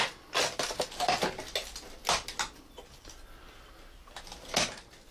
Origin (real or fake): real